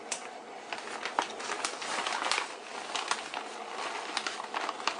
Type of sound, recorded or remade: recorded